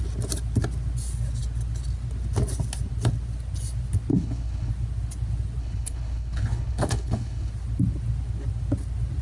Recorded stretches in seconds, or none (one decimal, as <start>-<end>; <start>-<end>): 0.0-4.1; 4.7-5.6; 7.5-9.2